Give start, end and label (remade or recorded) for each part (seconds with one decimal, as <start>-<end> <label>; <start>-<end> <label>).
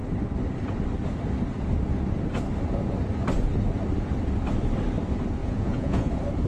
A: 0.0-5.4 recorded; 5.4-6.1 remade; 6.1-6.5 recorded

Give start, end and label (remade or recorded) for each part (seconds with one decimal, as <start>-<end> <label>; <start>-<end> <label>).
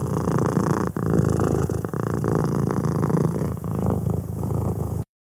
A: 0.0-1.4 recorded; 1.4-1.9 remade; 1.9-3.4 recorded; 3.4-5.3 remade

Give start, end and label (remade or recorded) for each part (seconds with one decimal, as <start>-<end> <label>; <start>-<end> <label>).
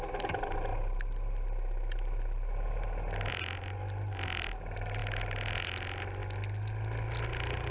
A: 0.0-7.7 recorded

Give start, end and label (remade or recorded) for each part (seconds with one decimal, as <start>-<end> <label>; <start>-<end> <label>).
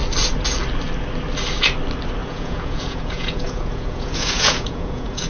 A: 0.0-2.2 recorded; 2.2-5.3 remade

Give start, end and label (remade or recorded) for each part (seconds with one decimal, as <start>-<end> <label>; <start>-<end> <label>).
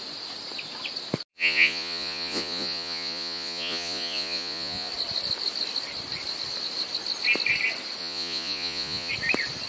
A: 0.0-1.3 recorded; 1.3-4.9 remade; 4.9-8.0 recorded; 8.0-9.1 remade; 9.1-9.7 recorded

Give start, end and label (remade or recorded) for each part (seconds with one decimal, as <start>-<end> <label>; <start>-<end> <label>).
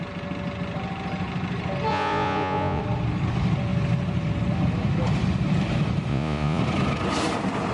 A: 0.0-1.9 recorded; 1.9-2.8 remade; 2.8-6.1 recorded; 6.1-6.6 remade; 6.6-7.7 recorded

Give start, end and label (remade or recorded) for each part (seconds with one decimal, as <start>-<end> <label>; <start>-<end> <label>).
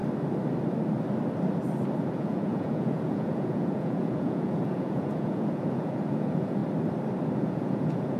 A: 0.0-2.1 recorded; 2.1-6.6 remade; 6.6-7.4 recorded; 7.4-8.2 remade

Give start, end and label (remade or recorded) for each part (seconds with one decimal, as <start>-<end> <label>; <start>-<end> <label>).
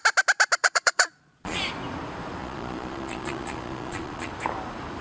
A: 0.0-0.6 recorded; 0.6-1.6 remade; 1.6-2.4 recorded; 2.4-4.3 remade; 4.3-5.0 recorded